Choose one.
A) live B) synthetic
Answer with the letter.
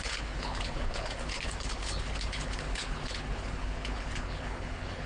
B